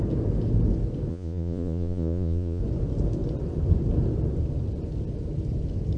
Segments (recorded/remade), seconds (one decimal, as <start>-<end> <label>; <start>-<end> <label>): 0.0-1.1 recorded; 1.1-2.6 remade; 2.6-6.0 recorded